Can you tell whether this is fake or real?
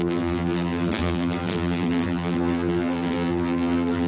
fake